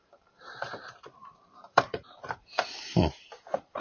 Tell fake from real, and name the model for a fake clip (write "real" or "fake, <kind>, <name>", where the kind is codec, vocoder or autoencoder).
fake, vocoder, BigVGAN v2